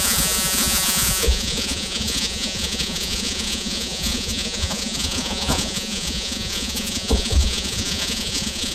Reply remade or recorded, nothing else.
remade